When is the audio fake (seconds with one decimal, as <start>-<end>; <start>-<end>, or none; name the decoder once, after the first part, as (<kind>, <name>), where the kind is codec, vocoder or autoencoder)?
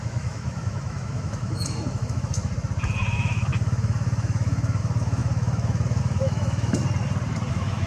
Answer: 0.0-2.4 (autoencoder, DAC-VAE); 3.1-6.8; 7.5-7.9